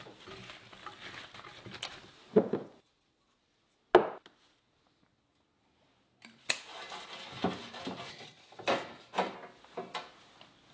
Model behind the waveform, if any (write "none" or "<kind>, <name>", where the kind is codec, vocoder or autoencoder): none